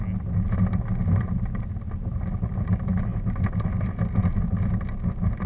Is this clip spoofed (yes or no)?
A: no